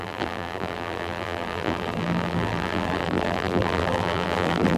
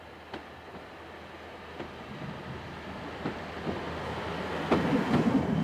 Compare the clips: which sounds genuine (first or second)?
second